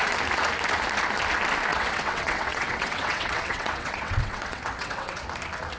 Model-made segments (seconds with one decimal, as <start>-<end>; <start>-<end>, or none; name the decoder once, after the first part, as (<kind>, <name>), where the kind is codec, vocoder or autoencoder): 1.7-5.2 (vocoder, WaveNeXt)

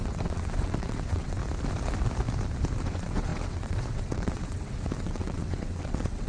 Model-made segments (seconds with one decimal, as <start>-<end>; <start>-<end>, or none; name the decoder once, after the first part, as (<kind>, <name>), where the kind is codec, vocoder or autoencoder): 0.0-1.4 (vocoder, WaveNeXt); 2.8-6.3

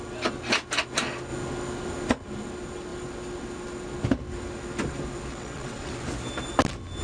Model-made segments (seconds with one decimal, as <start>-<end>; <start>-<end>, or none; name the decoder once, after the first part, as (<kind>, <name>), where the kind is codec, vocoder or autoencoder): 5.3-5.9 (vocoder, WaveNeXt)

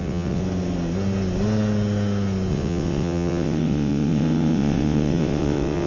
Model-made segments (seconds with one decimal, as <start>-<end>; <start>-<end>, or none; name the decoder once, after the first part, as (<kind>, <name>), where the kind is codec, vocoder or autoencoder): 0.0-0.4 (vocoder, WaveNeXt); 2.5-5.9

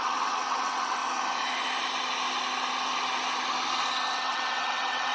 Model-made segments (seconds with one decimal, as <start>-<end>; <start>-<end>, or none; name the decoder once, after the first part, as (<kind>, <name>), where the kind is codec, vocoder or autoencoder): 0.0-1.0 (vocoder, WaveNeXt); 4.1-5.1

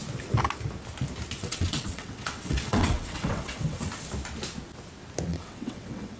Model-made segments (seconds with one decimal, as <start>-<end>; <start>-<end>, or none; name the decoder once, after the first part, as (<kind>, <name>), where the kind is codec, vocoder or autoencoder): 1.4-3.9 (vocoder, WaveNeXt); 5.3-6.2

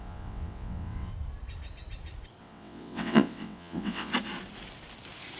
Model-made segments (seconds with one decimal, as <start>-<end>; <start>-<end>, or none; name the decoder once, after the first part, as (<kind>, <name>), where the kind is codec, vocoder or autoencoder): 0.0-1.1 (vocoder, WaveNeXt); 2.4-4.1